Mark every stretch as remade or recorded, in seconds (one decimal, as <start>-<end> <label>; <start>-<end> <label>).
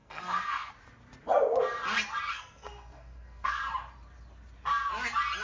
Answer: 0.0-0.7 remade; 0.7-2.3 recorded; 2.3-3.6 remade; 3.6-5.4 recorded